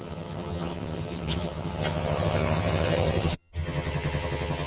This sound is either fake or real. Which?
fake